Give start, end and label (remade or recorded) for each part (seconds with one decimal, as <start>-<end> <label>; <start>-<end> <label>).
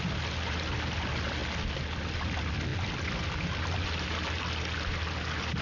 0.0-5.6 recorded